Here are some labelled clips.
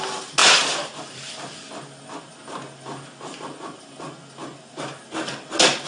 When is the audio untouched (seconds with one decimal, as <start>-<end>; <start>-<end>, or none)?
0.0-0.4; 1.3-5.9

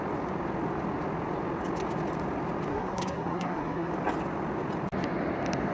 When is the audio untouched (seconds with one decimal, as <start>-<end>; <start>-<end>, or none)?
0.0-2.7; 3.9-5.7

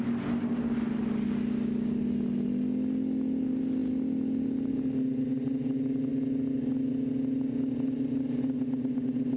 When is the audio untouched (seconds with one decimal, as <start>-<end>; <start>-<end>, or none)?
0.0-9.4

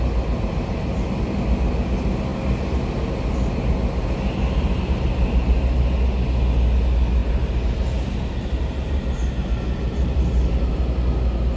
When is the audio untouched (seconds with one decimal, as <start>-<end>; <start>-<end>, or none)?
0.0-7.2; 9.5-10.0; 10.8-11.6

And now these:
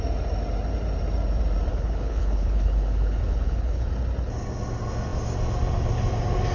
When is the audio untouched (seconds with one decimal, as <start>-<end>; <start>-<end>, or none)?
0.0-1.7; 3.9-6.5

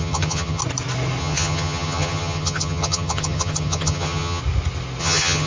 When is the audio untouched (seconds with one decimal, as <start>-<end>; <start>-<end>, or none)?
0.6-1.2; 4.4-5.0